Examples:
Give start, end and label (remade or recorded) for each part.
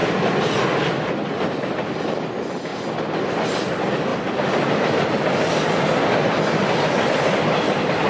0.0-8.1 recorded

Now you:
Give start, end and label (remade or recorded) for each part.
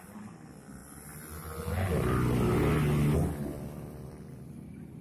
0.0-0.8 remade; 0.8-3.8 recorded; 3.8-5.0 remade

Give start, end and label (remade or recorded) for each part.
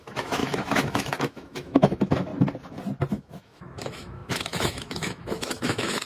0.0-2.3 remade; 2.3-3.1 recorded; 3.1-6.1 remade